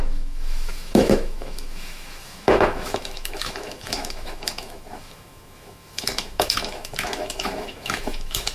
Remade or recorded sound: remade